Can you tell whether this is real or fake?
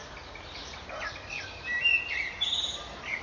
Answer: real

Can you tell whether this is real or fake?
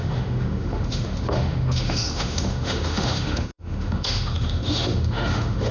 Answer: fake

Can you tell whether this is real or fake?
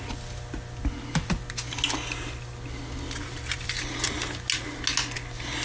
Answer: real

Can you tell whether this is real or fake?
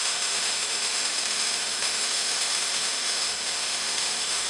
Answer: fake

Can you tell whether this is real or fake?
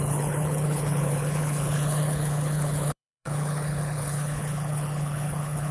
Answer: fake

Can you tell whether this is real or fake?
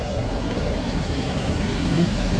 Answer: fake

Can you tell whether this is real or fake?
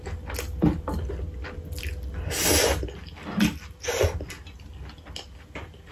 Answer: real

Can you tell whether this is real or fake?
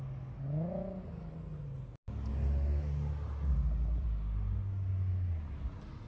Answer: real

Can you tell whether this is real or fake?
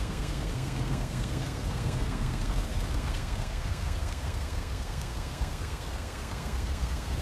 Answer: fake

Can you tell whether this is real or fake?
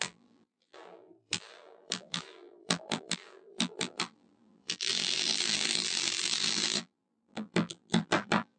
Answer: fake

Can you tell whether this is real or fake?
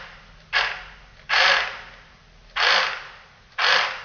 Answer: real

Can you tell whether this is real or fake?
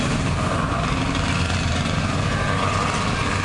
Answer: real